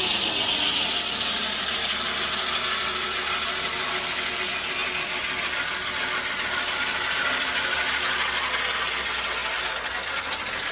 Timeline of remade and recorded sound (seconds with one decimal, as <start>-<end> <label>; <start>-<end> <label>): 0.0-10.7 recorded